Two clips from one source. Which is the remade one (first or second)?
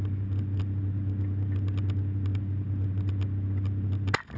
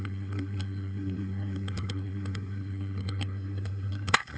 second